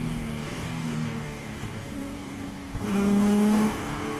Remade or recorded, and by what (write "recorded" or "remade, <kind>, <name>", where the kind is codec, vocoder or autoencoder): remade, codec, DAC